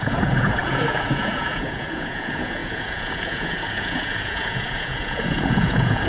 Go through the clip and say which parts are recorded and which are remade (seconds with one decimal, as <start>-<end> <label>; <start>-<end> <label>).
0.0-6.1 remade

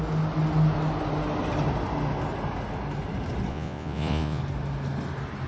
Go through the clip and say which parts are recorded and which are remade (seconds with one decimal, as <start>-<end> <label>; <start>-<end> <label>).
0.0-3.5 recorded; 3.5-4.4 remade; 4.4-5.5 recorded

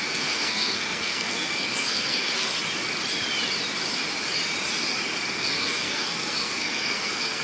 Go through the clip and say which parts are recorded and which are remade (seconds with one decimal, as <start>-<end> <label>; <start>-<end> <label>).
0.0-2.5 remade; 2.5-5.3 recorded; 5.3-7.4 remade

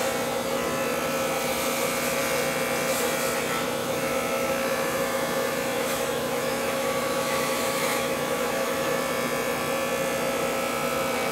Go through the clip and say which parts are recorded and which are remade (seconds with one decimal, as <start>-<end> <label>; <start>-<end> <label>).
0.0-3.8 recorded; 3.8-9.0 remade; 9.0-11.3 recorded